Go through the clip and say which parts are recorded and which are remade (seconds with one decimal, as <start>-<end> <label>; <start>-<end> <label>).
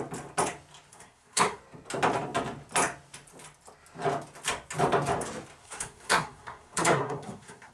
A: 0.0-0.9 recorded; 0.9-1.6 remade; 1.6-5.6 recorded; 5.6-7.7 remade